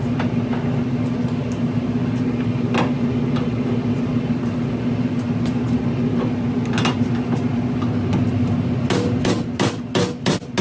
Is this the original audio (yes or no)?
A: yes